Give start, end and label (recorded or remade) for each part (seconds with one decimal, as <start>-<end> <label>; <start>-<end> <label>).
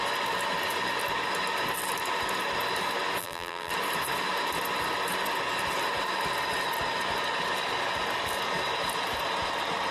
0.0-3.2 recorded; 3.2-3.7 remade; 3.7-9.9 recorded